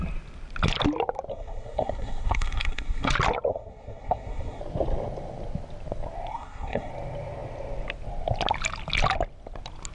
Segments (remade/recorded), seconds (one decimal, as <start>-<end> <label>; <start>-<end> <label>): 0.0-1.3 recorded; 1.3-3.1 remade; 3.1-3.5 recorded; 3.5-4.6 remade; 4.6-6.3 recorded; 6.3-6.9 remade; 6.9-9.9 recorded